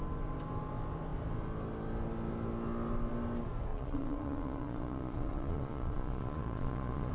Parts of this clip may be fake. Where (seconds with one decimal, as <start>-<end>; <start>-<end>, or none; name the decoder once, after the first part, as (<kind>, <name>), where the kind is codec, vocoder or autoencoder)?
3.7-7.1 (vocoder, Vocos)